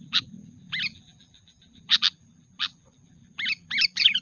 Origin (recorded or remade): remade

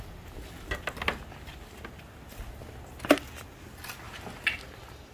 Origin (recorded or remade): recorded